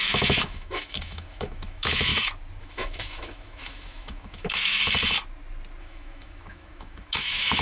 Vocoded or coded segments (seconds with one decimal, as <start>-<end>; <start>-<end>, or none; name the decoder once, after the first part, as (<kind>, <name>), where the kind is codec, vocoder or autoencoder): 0.0-2.1 (autoencoder, DAC-VAE); 2.6-4.8; 5.8-7.6